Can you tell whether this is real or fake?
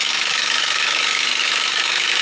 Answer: fake